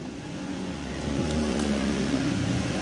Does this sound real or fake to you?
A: fake